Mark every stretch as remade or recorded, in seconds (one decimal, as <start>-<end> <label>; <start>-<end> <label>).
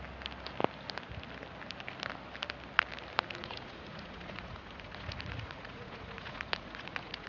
0.0-3.4 recorded; 3.4-7.3 remade